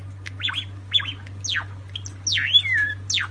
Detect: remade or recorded recorded